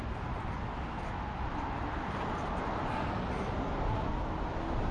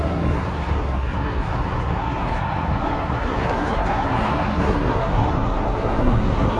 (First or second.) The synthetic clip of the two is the second